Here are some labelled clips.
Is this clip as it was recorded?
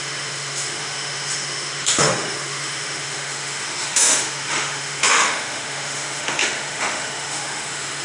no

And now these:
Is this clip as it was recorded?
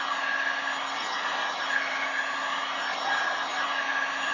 yes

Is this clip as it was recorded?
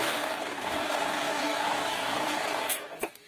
no